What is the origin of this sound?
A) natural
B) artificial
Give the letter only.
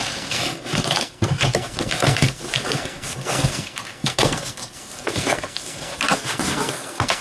B